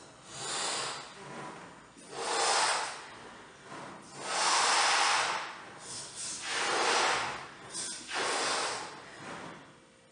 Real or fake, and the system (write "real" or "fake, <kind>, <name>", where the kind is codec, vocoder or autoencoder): real